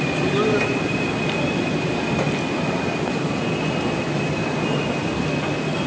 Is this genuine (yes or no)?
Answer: yes